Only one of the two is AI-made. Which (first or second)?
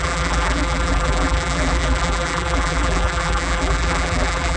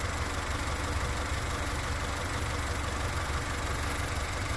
first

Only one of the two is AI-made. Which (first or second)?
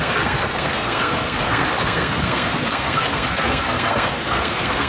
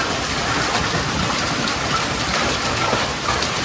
first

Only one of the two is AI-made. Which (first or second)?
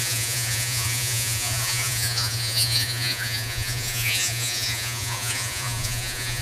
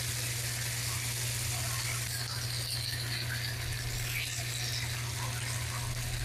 first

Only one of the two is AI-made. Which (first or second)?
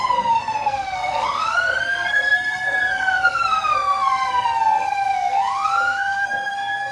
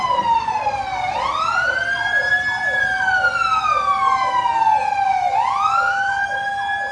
first